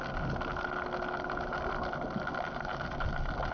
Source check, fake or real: real